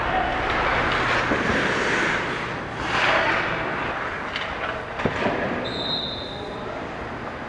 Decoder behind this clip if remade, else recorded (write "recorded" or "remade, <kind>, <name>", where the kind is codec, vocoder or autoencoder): recorded